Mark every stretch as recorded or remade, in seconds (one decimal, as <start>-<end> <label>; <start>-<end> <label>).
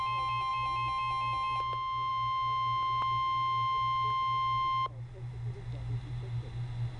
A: 0.0-7.0 recorded